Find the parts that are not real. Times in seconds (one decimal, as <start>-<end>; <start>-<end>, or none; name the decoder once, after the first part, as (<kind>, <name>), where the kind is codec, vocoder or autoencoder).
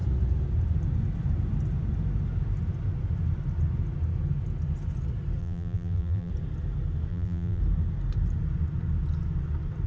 5.4-6.3 (vocoder, BigVGAN v2); 7.1-7.6